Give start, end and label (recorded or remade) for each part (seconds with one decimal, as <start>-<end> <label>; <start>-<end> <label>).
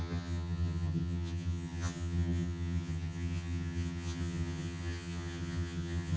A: 0.0-6.2 remade